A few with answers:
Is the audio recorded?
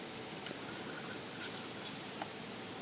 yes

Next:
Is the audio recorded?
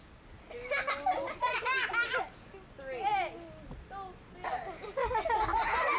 yes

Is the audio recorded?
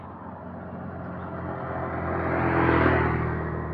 yes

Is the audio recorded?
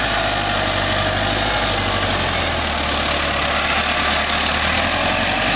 yes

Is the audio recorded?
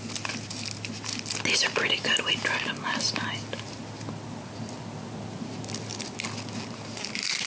yes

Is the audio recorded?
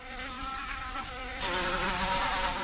no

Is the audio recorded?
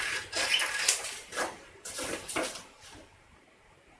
no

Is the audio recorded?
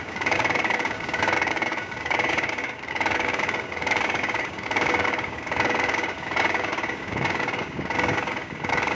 no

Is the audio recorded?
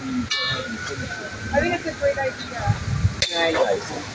yes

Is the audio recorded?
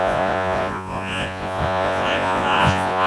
no